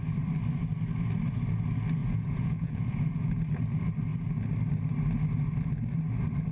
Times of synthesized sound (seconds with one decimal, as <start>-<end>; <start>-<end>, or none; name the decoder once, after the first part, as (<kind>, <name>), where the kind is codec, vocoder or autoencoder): 2.0-3.3 (vocoder, Vocos)